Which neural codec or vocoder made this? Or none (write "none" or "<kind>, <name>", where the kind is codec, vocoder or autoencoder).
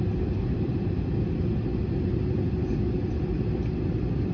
none